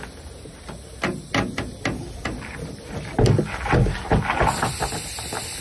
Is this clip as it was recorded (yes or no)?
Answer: yes